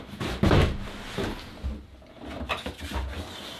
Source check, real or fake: real